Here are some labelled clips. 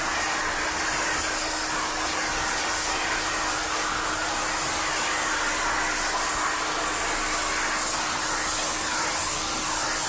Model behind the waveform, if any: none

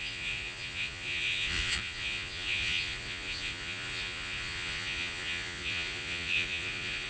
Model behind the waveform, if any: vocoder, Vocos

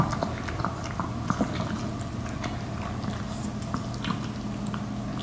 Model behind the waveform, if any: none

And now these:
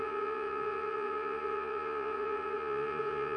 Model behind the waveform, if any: vocoder, Vocos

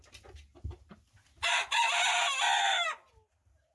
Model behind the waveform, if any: none